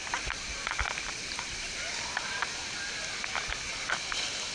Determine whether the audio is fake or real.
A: real